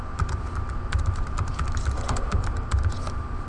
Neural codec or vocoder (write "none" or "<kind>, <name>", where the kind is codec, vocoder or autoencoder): vocoder, BigVGAN v2